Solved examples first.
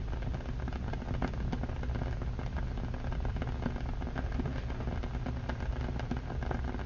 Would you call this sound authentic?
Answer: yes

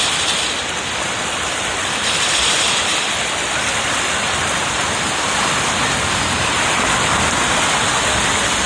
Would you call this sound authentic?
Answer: no